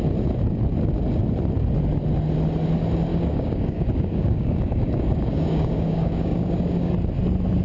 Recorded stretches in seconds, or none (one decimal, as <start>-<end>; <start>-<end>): 0.0-3.1; 6.9-7.6